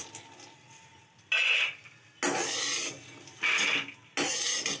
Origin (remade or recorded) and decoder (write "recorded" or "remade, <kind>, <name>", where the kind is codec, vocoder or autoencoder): recorded